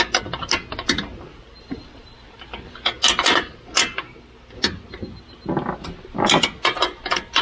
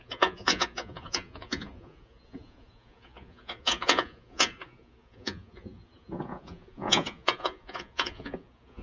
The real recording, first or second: first